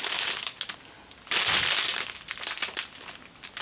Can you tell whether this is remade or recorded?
recorded